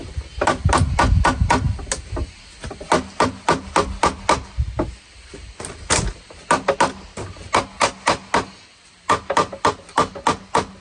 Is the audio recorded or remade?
recorded